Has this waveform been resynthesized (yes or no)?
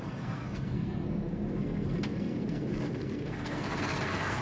yes